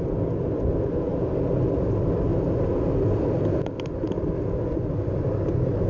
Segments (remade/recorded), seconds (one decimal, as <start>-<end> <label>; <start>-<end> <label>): 0.0-5.9 recorded